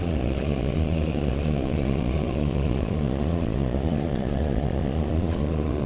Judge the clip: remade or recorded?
remade